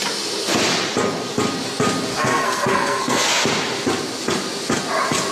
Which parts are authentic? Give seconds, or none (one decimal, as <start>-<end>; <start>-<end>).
0.0-2.1; 3.4-5.3

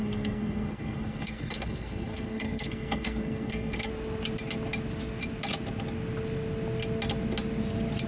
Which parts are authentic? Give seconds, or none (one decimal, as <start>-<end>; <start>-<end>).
3.9-8.1

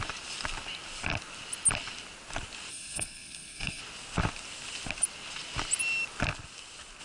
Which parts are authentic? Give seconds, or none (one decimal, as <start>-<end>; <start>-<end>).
0.0-2.7; 3.8-7.0

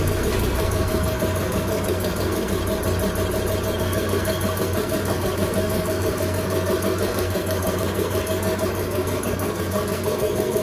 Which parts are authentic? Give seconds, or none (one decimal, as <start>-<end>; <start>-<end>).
2.6-3.8